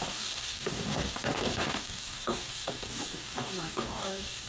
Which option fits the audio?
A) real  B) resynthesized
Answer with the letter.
B